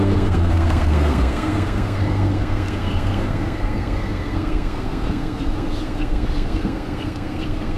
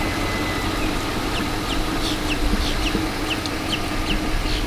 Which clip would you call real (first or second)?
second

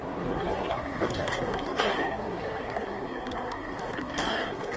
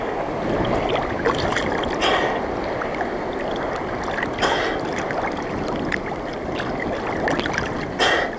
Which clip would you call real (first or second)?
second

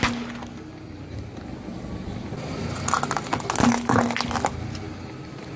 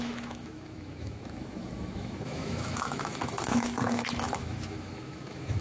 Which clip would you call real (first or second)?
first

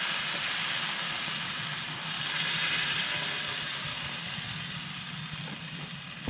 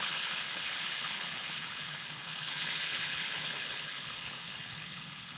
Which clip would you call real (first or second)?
first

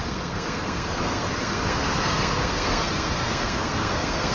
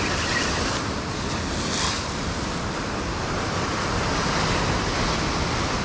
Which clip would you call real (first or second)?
second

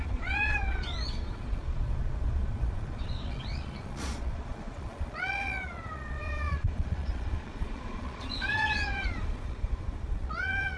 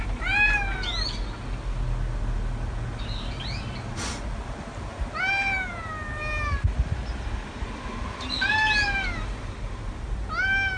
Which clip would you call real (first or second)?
second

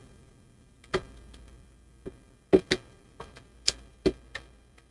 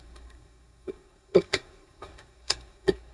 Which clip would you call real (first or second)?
first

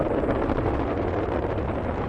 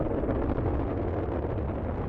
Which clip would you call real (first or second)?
second